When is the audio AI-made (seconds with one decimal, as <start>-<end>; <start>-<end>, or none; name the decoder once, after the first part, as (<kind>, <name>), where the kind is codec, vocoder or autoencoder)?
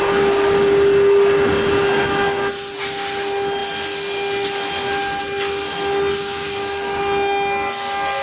6.2-7.0 (codec, DAC)